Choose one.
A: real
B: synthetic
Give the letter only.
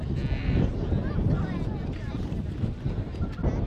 A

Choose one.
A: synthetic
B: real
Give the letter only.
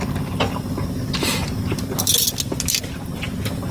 B